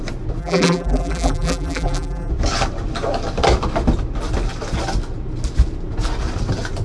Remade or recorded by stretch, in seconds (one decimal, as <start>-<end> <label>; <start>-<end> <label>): 0.0-0.4 recorded; 0.4-2.3 remade; 2.3-6.8 recorded